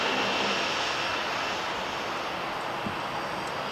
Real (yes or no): yes